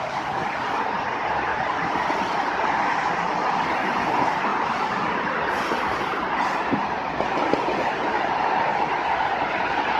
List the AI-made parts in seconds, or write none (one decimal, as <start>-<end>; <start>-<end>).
1.5-3.4; 8.7-10.0